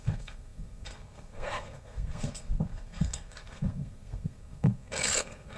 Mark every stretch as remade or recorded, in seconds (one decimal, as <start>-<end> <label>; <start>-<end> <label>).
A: 0.0-5.6 remade